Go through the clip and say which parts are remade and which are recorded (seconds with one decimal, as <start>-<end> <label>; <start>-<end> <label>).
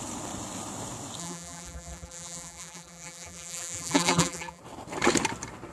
0.0-1.2 recorded; 1.2-4.6 remade; 4.6-5.7 recorded